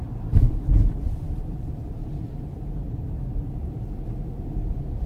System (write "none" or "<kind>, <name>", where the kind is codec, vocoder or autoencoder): vocoder, BigVGAN v2